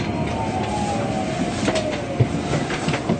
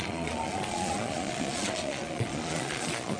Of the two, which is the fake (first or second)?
second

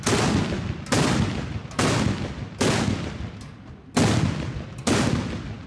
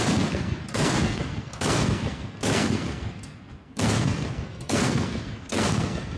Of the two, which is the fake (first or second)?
second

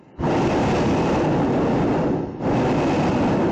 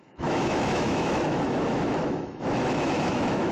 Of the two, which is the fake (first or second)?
second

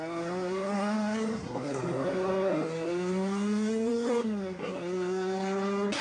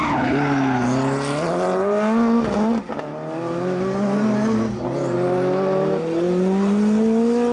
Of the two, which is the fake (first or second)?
first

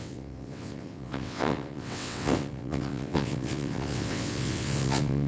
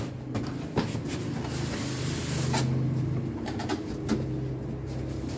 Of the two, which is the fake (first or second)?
first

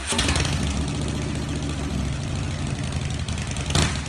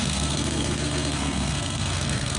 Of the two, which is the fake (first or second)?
second